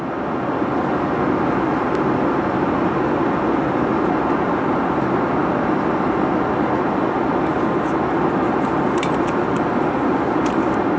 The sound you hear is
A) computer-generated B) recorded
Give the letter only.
B